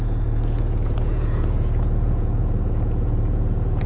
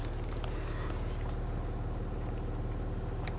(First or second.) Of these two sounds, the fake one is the first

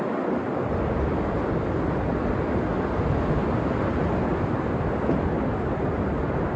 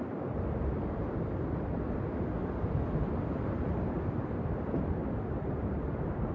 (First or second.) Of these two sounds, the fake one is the second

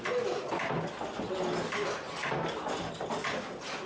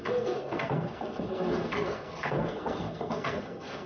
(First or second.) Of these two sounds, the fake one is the second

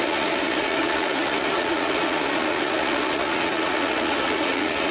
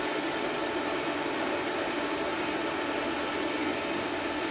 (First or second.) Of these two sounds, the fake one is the first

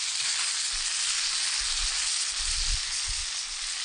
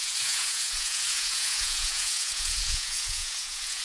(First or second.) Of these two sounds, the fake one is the second